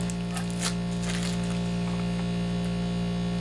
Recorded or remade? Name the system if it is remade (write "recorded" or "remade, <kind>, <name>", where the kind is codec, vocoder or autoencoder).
recorded